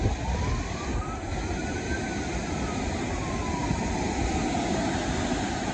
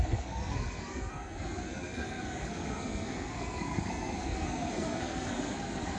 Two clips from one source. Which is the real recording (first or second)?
first